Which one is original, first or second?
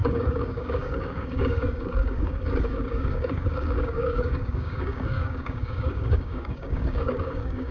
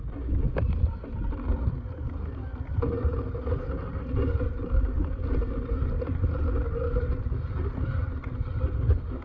second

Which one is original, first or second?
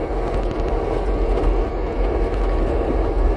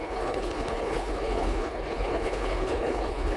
first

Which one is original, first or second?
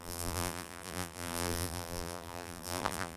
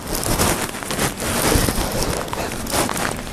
second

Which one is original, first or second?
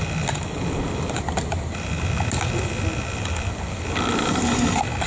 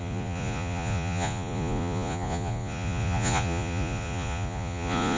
first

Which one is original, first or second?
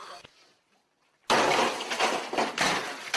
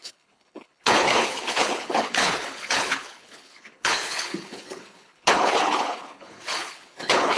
first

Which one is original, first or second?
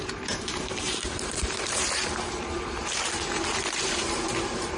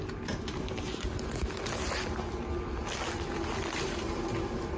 second